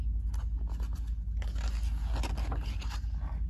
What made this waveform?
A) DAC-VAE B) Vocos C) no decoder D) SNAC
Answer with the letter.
C